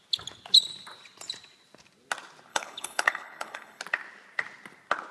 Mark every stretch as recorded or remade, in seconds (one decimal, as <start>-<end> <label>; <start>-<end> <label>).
0.0-2.5 recorded; 2.5-3.8 remade; 3.8-5.1 recorded